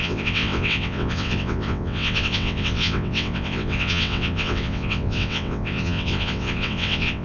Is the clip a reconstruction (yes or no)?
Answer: yes